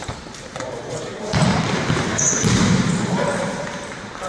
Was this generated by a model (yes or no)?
yes